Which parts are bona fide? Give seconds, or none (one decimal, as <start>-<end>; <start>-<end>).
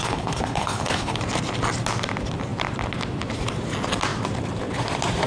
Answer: 1.2-5.3